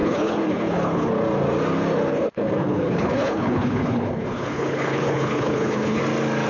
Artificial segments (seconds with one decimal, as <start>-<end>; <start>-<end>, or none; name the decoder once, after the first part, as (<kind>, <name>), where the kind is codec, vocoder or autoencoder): 0.0-1.1 (codec, HILCodec); 2.1-6.0